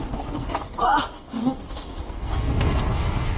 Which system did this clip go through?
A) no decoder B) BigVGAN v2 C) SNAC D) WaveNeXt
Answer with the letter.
C